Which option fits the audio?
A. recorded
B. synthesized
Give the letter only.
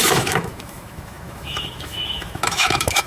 B